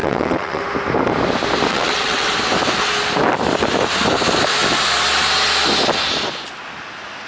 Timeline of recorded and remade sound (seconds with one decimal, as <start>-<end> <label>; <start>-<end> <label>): 0.0-0.6 remade; 0.6-1.7 recorded; 1.7-2.3 remade; 2.3-7.3 recorded